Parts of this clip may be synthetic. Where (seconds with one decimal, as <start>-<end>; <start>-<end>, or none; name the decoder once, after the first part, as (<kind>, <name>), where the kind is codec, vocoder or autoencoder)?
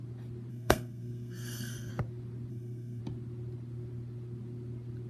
0.5-1.9 (codec, SNAC); 2.5-3.0